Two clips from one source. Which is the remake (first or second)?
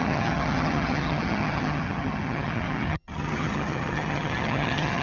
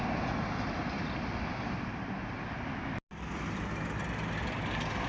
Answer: first